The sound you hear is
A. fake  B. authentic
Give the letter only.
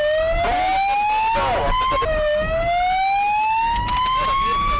B